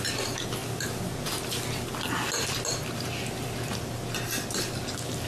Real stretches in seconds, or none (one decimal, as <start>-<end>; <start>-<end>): 0.0-5.3